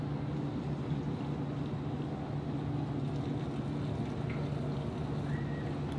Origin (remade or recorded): recorded